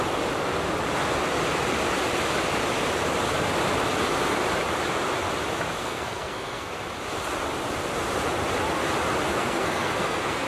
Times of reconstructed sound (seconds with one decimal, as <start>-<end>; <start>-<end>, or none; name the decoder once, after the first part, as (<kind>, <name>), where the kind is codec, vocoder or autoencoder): 5.8-6.8 (codec, SNAC); 9.3-10.5